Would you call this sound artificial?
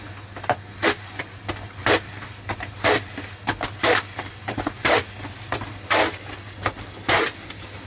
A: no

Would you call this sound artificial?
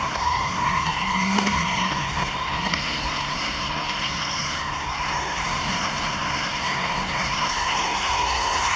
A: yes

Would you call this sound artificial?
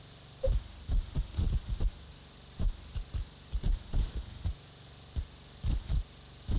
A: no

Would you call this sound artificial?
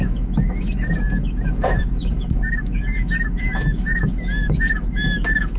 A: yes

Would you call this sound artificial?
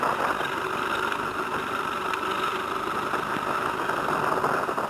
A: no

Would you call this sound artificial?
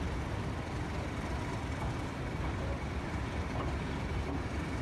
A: yes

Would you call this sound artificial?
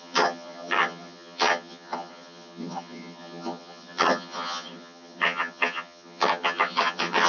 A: yes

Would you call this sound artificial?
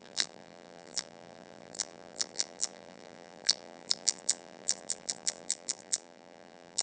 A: yes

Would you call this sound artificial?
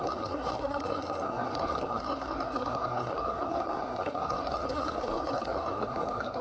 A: yes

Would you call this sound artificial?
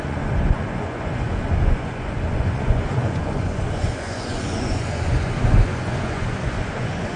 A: yes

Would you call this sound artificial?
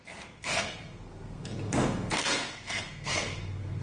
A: yes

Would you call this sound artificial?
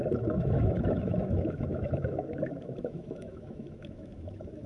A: yes